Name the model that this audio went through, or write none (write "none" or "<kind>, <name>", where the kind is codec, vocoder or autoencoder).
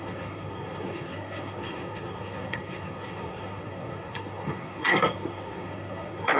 codec, SNAC